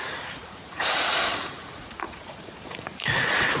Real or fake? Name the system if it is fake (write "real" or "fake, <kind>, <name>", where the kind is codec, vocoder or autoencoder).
fake, vocoder, Vocos